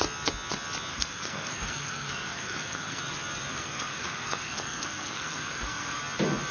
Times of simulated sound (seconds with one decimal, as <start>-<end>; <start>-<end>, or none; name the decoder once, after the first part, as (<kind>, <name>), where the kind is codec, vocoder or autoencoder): 0.9-3.0 (codec, SNAC); 3.5-6.0